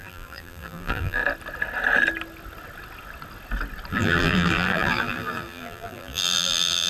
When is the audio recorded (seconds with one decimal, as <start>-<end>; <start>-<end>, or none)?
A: 1.2-3.9